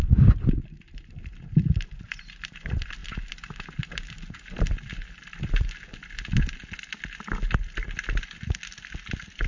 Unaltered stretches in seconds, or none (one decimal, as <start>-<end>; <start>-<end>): 0.0-9.5